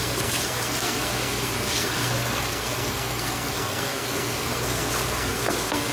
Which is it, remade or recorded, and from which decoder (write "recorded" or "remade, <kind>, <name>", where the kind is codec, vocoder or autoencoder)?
remade, codec, SNAC